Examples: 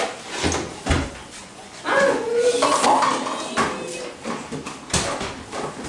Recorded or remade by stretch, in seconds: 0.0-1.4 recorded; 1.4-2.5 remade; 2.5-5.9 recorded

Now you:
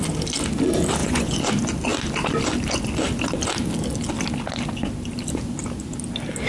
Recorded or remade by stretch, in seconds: 0.0-1.0 recorded; 1.0-1.5 remade; 1.5-6.5 recorded

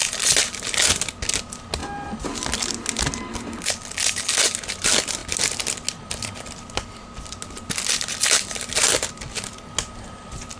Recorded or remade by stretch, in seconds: 0.0-10.6 recorded

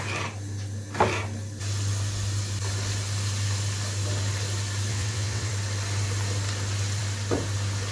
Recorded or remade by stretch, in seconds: 0.0-4.9 recorded; 4.9-5.5 remade; 5.5-7.9 recorded